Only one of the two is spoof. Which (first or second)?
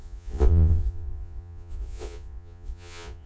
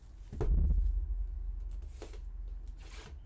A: first